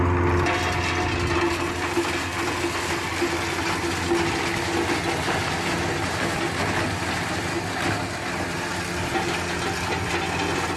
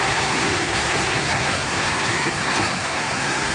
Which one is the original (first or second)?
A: first